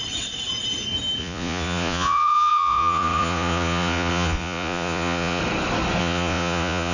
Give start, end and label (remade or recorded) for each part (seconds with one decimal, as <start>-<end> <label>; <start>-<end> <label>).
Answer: 0.0-1.2 recorded; 1.2-5.4 remade; 5.4-6.0 recorded; 6.0-6.9 remade